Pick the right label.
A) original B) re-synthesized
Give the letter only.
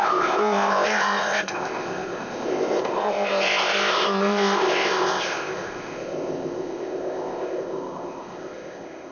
B